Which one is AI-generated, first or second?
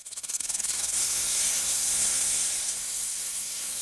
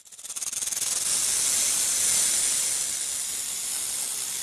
first